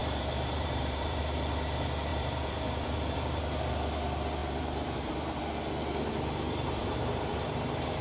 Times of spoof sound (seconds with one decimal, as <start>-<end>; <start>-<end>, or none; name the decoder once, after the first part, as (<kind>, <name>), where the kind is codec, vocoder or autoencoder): 0.0-1.2 (vocoder, BigVGAN v2); 2.1-3.4; 4.4-5.4; 6.8-8.0